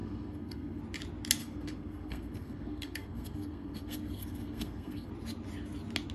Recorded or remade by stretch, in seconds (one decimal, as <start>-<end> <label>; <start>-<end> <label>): 0.0-0.8 remade; 0.8-1.4 recorded; 1.4-5.1 remade; 5.1-6.1 recorded